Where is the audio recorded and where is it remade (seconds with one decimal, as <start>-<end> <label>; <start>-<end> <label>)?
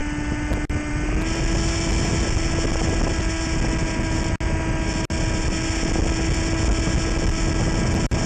0.0-8.3 recorded